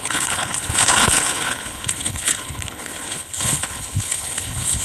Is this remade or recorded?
remade